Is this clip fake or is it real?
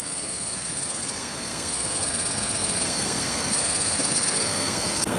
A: fake